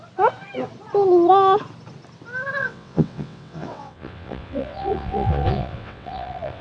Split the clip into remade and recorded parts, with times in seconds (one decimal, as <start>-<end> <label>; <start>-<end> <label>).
0.0-2.6 recorded; 2.6-6.6 remade